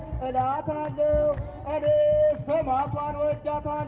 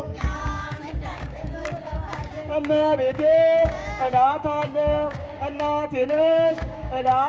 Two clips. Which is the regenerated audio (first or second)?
second